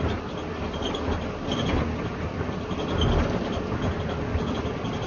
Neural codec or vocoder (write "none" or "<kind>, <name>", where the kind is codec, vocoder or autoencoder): none